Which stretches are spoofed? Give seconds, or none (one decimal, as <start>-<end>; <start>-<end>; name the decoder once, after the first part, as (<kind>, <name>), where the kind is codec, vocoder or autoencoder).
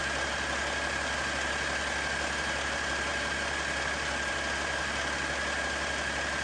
none